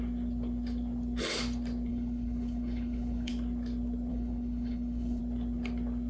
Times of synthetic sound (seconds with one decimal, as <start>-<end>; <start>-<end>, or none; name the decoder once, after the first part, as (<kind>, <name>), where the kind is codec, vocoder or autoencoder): 1.9-3.3 (codec, HILCodec); 4.1-5.2